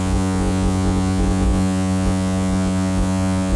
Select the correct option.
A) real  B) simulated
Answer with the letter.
B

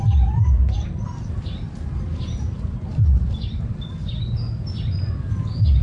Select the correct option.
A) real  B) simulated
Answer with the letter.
A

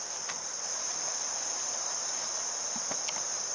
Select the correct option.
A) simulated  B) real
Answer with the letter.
B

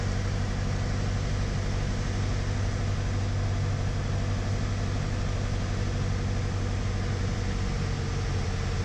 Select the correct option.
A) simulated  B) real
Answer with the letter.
B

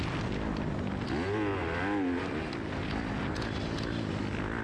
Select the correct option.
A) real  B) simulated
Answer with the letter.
A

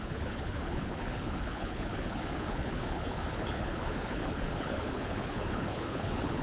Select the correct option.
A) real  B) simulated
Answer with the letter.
B